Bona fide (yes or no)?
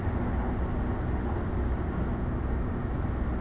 yes